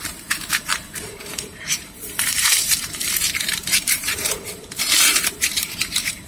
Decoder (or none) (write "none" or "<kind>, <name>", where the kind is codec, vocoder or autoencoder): vocoder, BigVGAN v2